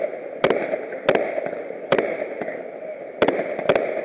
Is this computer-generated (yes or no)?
no